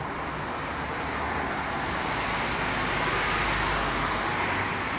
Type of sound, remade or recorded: recorded